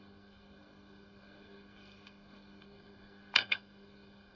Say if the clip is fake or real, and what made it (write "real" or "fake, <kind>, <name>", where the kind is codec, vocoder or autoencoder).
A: fake, codec, SNAC